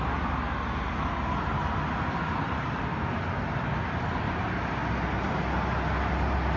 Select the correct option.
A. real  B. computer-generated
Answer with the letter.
A